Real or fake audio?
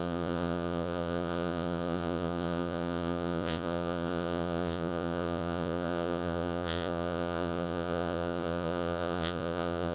fake